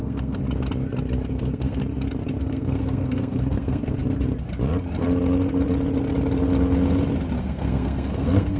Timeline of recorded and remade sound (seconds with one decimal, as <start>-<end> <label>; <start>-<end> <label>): 0.0-0.4 remade; 0.4-1.3 recorded; 1.3-1.8 remade; 1.8-2.4 recorded; 2.4-4.0 remade; 4.0-7.4 recorded; 7.4-8.6 remade